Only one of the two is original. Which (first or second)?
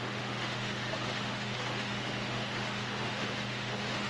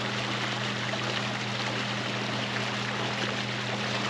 second